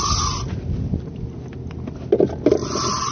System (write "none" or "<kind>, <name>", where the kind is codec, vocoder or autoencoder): none